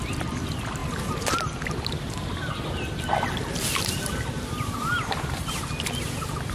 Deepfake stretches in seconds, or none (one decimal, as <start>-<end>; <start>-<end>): none

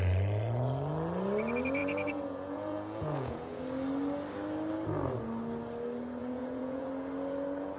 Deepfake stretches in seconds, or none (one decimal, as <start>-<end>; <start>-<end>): 1.8-3.6; 6.2-6.9

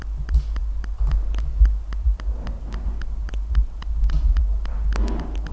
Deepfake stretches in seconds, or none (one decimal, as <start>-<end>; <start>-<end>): none

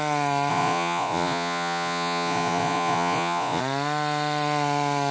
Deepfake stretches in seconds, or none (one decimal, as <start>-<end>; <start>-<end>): 0.5-3.6